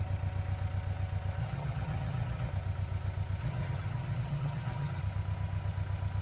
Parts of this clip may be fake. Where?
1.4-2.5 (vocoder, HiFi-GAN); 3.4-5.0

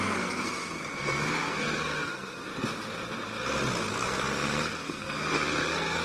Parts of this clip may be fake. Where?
0.0-2.5 (codec, SNAC); 3.9-6.0

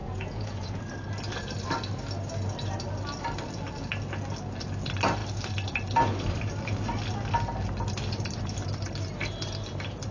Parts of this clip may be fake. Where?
0.0-0.8 (vocoder, Vocos)

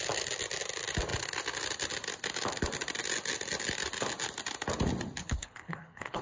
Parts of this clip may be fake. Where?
5.2-6.2 (codec, HILCodec)